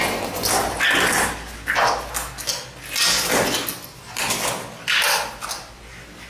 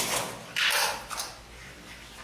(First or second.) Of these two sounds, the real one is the first